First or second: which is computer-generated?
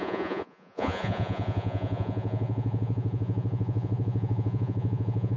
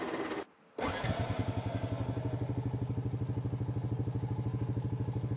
first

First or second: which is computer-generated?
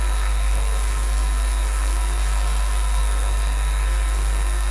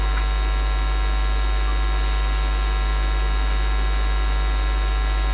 first